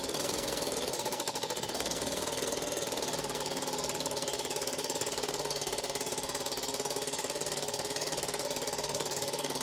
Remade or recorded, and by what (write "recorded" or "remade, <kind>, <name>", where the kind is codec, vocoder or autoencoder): remade, codec, SNAC